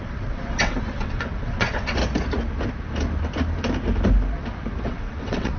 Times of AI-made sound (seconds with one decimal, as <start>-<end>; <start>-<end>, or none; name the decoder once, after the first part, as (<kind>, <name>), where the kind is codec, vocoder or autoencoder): 0.0-2.0 (vocoder, WaveNeXt); 4.8-5.6